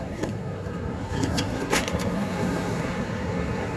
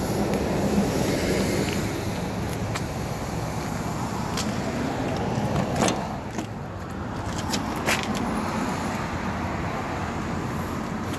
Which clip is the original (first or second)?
second